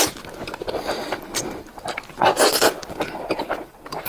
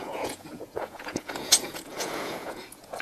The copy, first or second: second